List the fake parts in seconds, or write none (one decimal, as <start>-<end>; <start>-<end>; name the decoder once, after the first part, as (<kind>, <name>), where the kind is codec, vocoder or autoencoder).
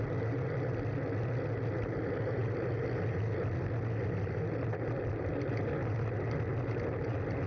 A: none